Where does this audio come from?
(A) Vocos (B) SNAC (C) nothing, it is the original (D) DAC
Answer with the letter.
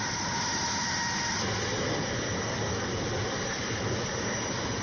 C